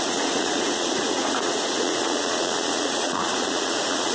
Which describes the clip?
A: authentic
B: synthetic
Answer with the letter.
B